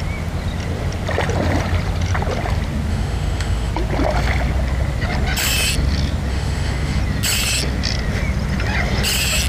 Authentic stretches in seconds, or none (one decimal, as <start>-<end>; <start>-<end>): 0.0-2.9; 3.7-6.3; 7.0-9.5